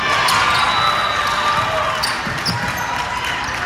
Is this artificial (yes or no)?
no